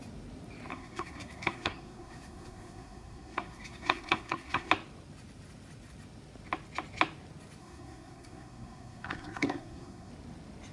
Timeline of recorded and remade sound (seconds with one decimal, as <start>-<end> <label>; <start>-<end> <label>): 0.0-0.7 recorded; 0.7-4.7 remade; 4.7-7.6 recorded; 7.6-10.1 remade; 10.1-10.7 recorded